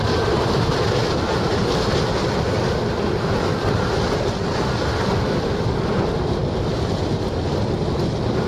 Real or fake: real